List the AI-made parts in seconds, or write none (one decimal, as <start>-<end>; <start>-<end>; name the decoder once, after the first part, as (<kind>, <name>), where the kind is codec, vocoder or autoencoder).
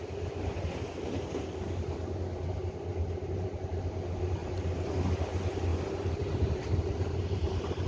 2.9-3.8 (vocoder, BigVGAN v2); 4.4-4.9; 5.7-7.5